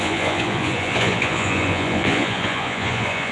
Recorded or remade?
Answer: remade